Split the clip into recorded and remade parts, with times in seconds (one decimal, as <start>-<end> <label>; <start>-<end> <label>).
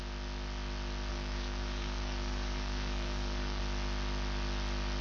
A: 0.0-1.1 recorded; 1.1-3.6 remade; 3.6-5.0 recorded